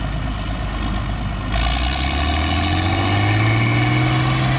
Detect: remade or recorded recorded